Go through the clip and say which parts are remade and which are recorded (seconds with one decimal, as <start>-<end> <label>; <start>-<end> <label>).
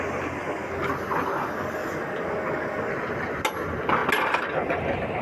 0.0-0.4 recorded; 0.4-0.9 remade; 0.9-1.3 recorded; 1.3-2.9 remade; 2.9-5.2 recorded